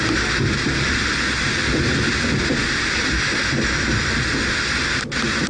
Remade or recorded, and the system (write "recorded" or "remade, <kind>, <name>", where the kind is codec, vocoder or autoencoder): recorded